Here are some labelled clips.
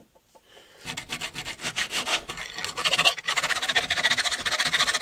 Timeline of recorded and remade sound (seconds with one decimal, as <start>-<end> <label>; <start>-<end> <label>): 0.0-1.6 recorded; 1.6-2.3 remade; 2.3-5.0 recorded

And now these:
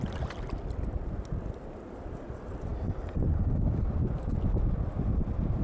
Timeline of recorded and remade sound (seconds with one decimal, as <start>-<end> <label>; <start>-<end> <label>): 0.0-5.6 recorded

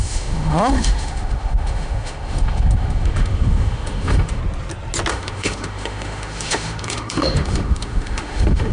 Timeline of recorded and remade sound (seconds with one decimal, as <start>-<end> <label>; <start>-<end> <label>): 0.0-4.4 remade; 4.4-5.1 recorded; 5.1-8.7 remade

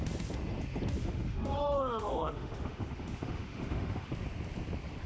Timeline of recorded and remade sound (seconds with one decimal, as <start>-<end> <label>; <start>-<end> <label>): 0.0-1.0 recorded; 1.0-4.1 remade; 4.1-5.1 recorded

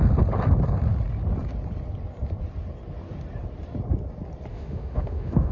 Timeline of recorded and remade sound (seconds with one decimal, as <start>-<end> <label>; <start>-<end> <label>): 0.0-4.5 recorded; 4.5-5.5 remade